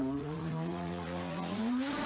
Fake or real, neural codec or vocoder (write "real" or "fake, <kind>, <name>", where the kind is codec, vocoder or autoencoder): fake, vocoder, Vocos